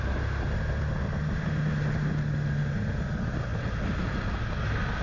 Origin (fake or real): real